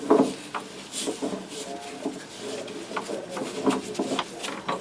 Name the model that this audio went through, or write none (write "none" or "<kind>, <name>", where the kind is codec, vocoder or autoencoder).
none